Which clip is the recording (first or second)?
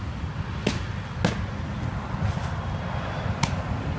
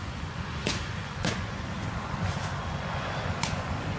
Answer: first